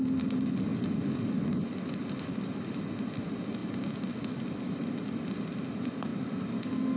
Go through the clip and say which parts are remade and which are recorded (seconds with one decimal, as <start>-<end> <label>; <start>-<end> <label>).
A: 0.0-6.1 recorded; 6.1-7.0 remade